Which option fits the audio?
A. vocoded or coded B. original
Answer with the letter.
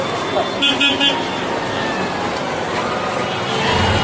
B